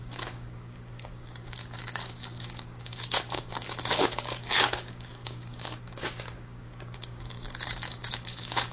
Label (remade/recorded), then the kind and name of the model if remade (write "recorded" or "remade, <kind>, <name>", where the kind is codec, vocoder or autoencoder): remade, codec, DAC